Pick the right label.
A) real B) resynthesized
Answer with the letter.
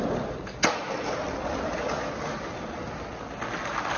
A